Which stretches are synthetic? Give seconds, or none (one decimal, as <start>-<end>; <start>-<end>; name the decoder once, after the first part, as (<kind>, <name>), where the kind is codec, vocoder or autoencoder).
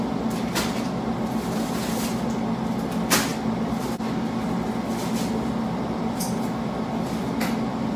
none